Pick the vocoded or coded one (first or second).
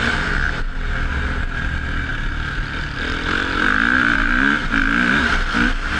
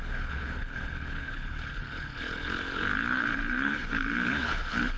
second